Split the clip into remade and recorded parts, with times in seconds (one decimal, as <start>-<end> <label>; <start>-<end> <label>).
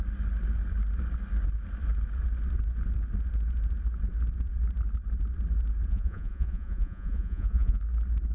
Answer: 0.0-5.9 recorded; 5.9-7.8 remade; 7.8-8.3 recorded